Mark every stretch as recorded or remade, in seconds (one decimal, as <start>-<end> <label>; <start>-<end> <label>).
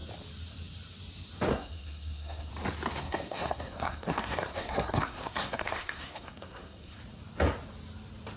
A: 0.0-1.5 recorded; 1.5-2.5 remade; 2.5-3.0 recorded; 3.0-7.0 remade; 7.0-8.4 recorded